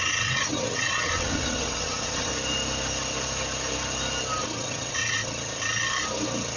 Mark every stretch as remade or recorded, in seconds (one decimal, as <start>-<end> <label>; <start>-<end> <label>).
0.0-2.3 remade; 2.3-4.4 recorded; 4.4-5.2 remade; 5.2-6.6 recorded